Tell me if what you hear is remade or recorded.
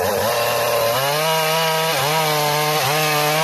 recorded